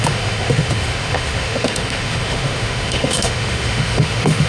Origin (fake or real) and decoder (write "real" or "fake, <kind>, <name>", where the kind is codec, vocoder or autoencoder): fake, autoencoder, DAC-VAE